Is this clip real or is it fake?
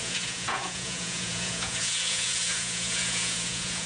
fake